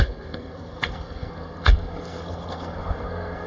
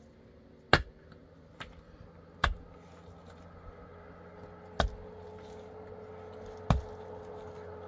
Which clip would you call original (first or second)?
second